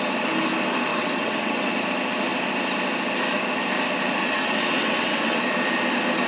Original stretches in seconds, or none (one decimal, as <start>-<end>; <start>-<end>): 0.0-0.9; 1.7-4.2; 5.4-6.3